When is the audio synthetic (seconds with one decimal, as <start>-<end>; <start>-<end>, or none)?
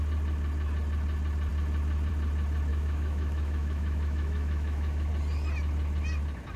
2.7-5.1